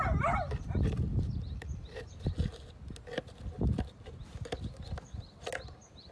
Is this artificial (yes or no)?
no